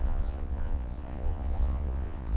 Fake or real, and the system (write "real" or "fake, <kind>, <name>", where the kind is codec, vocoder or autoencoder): fake, vocoder, Vocos